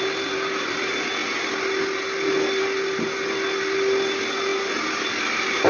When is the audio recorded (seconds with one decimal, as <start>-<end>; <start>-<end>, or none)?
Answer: 0.0-5.7